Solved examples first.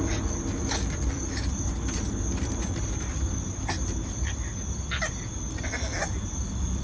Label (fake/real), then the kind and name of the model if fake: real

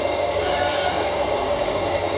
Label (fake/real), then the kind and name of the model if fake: fake, codec, DAC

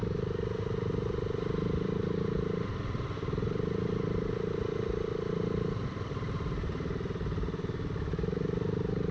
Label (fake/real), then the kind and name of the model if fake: real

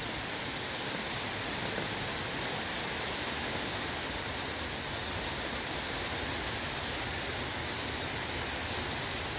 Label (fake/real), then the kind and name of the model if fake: real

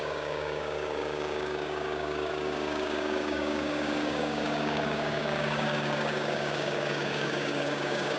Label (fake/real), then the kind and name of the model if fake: fake, codec, DAC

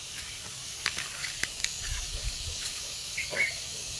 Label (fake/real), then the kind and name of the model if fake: fake, codec, DAC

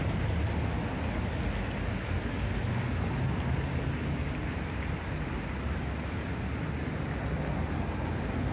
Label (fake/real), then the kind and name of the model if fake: real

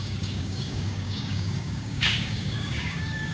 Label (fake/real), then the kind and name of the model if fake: fake, codec, DAC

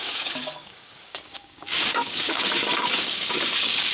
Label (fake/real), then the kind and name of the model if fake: fake, codec, DAC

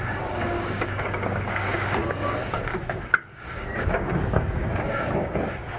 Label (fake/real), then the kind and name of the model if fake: fake, codec, DAC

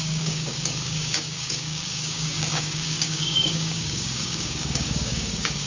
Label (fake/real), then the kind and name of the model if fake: fake, codec, DAC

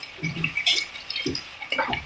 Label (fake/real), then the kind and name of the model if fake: real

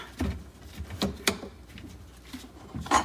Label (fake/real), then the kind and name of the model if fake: real